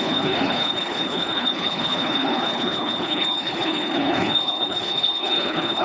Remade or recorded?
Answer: remade